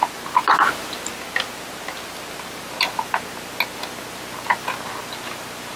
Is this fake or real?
real